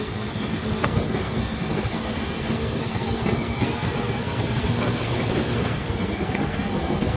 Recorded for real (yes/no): no